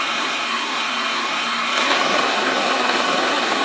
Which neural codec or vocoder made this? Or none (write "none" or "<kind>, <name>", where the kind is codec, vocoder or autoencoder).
codec, SNAC